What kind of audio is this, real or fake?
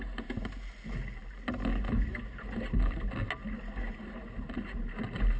real